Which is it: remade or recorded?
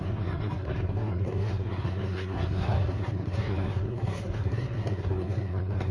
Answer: remade